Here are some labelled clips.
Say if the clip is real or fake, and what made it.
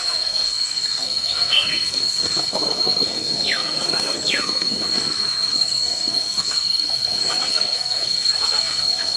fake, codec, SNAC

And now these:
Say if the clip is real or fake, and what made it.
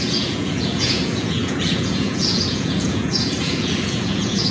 fake, vocoder, Vocos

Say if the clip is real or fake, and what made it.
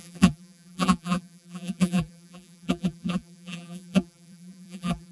fake, vocoder, BigVGAN v2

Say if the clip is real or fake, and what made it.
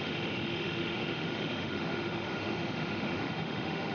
fake, autoencoder, DAC-VAE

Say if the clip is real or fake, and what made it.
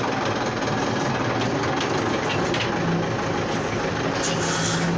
real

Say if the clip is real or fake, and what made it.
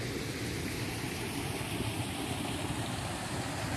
real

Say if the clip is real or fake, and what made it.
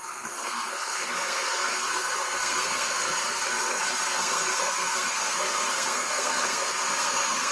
fake, codec, SNAC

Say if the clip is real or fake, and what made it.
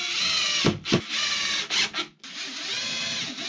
real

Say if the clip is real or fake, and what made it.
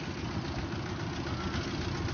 real